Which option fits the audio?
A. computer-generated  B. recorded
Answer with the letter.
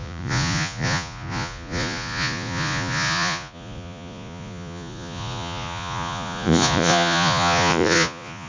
A